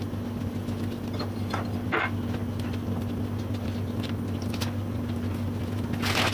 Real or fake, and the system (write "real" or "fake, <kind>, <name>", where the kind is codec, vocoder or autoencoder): real